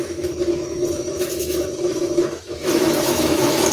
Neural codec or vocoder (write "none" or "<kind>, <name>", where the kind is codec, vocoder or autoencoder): autoencoder, DAC-VAE